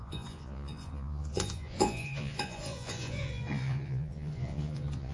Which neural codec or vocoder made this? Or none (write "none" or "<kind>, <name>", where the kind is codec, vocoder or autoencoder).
vocoder, Vocos